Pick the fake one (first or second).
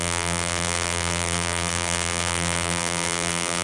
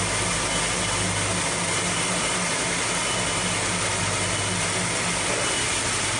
first